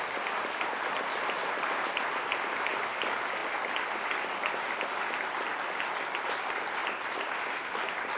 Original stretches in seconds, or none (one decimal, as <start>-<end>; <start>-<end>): 3.4-5.0; 6.8-7.6